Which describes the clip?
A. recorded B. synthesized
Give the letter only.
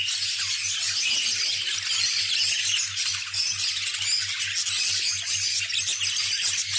A